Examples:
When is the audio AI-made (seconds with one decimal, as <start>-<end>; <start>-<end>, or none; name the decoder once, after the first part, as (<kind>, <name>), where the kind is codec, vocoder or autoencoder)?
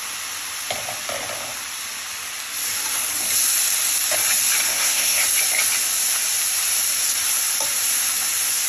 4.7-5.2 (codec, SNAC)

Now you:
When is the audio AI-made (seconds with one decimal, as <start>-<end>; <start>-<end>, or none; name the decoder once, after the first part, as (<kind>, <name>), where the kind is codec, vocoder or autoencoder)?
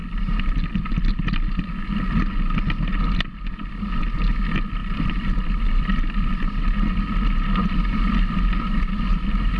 none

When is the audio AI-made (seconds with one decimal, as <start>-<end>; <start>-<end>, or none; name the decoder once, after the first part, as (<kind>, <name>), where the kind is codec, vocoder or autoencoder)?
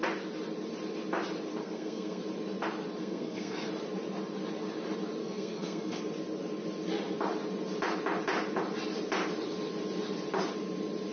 1.6-2.2 (codec, SNAC); 3.0-3.7; 5.2-6.0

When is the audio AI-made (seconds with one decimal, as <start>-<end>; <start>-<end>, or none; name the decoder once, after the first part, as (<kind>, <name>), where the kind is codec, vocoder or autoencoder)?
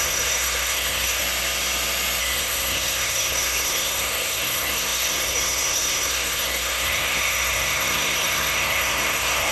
0.0-1.2 (codec, SNAC); 2.2-9.5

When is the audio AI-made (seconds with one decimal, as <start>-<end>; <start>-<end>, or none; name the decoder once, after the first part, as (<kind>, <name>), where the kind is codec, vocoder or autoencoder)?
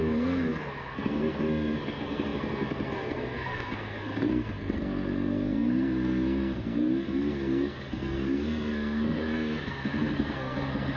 0.0-11.0 (codec, SNAC)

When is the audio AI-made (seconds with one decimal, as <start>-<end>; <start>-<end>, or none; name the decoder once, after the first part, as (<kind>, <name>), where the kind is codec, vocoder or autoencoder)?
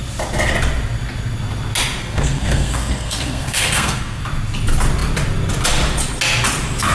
2.0-4.2 (codec, SNAC)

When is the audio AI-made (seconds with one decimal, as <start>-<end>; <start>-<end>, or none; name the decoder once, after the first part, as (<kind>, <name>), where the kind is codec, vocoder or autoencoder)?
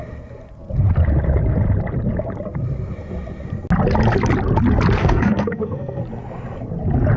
5.0-6.0 (codec, SNAC)